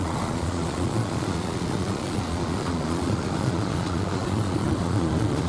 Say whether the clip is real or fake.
fake